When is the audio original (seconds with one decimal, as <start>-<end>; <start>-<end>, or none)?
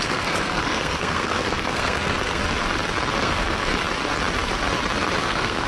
2.4-3.2; 3.7-5.2